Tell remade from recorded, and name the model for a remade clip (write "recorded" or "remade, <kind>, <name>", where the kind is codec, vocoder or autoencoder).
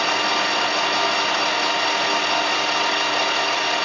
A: recorded